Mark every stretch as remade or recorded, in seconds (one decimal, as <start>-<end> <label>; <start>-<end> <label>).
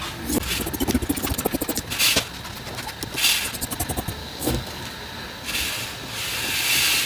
0.0-4.2 recorded; 4.2-4.8 remade; 4.8-7.1 recorded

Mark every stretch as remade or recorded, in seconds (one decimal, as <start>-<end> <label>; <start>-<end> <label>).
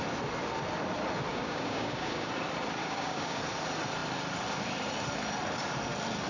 0.0-1.3 recorded; 1.3-2.3 remade; 2.3-2.8 recorded; 2.8-3.4 remade; 3.4-6.3 recorded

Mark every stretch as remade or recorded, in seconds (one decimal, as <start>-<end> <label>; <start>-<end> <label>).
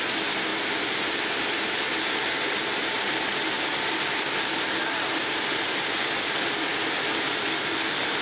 0.0-8.2 recorded